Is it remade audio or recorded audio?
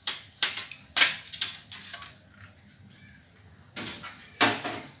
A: recorded